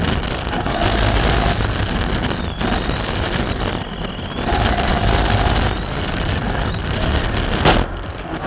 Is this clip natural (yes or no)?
yes